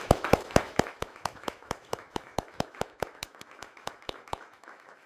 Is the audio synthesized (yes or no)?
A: yes